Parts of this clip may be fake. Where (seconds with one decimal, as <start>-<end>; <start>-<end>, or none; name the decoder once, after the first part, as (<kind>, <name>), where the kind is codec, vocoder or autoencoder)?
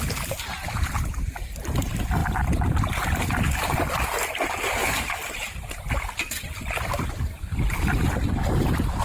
4.8-5.7 (vocoder, BigVGAN v2); 8.4-9.0